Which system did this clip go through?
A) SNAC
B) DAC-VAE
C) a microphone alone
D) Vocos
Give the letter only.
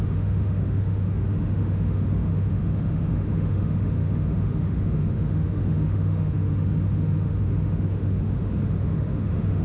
B